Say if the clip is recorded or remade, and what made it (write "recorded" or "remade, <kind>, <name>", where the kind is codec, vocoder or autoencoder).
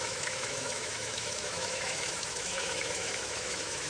remade, autoencoder, DAC-VAE